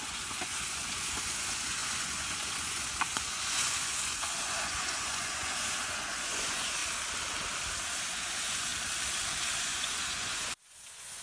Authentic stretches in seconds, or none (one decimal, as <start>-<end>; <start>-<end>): 6.8-8.0; 8.7-9.6